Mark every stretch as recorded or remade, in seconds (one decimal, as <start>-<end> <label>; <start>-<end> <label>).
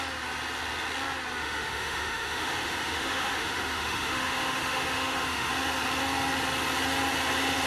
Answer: 0.0-1.4 recorded; 1.4-5.5 remade; 5.5-7.7 recorded